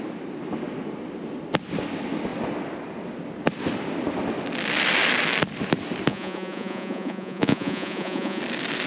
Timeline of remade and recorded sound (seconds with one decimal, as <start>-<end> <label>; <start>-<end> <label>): 0.0-6.1 recorded; 6.1-8.4 remade; 8.4-8.9 recorded